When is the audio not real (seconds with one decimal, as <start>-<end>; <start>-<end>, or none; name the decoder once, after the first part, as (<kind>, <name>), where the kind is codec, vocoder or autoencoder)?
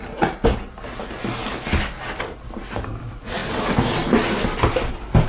none